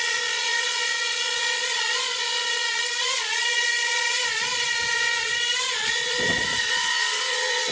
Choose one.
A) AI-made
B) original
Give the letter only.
A